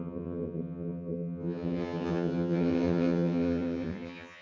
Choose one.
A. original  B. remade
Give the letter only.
B